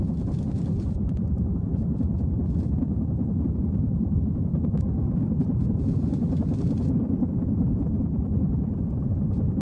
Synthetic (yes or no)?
no